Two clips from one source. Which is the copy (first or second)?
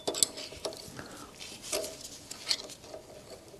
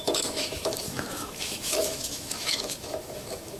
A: second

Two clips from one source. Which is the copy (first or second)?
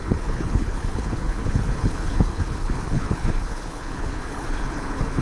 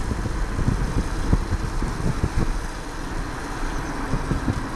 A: first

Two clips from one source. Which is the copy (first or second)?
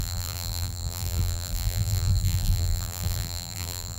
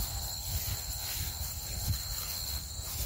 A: first